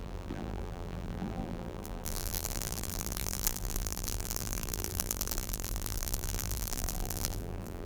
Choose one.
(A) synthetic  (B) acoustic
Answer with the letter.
A